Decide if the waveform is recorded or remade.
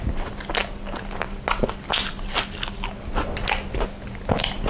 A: recorded